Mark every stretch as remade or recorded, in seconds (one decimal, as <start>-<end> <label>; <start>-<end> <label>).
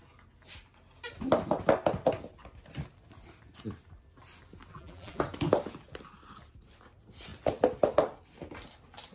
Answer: 0.0-4.7 recorded; 4.7-5.2 remade; 5.2-9.1 recorded